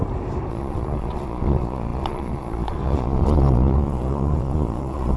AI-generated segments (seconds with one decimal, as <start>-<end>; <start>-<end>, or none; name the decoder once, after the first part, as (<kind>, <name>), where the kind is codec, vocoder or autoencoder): 0.5-5.2 (vocoder, Vocos)